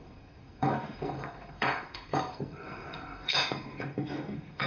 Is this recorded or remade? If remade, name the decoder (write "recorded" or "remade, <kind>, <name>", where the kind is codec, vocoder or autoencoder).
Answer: remade, codec, SNAC